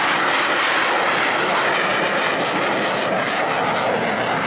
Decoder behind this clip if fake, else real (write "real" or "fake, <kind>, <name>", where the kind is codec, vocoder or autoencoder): real